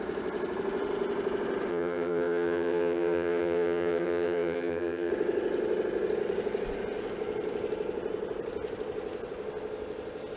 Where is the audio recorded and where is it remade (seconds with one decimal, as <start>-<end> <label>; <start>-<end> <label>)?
0.0-1.7 recorded; 1.7-5.1 remade; 5.1-10.4 recorded